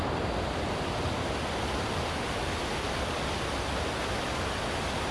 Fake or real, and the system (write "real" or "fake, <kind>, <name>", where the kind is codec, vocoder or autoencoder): real